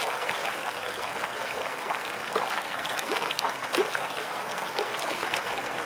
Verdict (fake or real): fake